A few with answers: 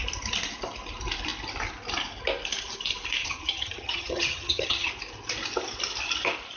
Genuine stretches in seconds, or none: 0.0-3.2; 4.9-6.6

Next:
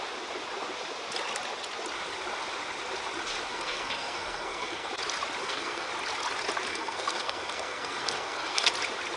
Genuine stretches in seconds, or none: 0.0-3.5; 4.9-5.4; 5.9-6.7; 8.7-9.2

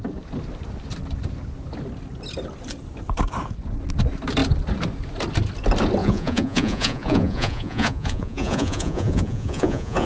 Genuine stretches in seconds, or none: 0.0-6.0

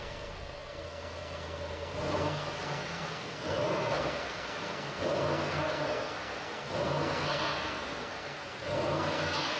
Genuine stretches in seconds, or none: none

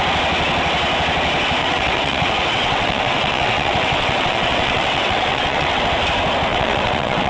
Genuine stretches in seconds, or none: 0.0-1.6; 5.8-6.5

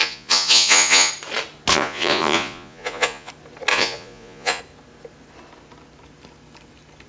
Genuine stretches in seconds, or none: 1.1-1.7; 3.3-3.7; 4.6-7.1